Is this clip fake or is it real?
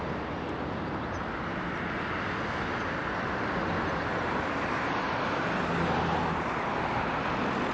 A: real